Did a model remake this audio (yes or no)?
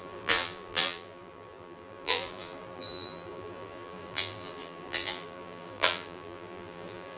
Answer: yes